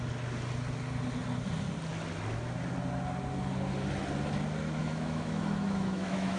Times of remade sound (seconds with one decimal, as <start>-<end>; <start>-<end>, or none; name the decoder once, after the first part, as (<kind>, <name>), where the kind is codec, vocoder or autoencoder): 4.8-6.4 (autoencoder, DAC-VAE)